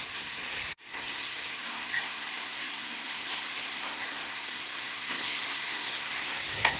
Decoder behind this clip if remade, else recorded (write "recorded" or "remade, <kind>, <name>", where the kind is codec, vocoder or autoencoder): remade, codec, SNAC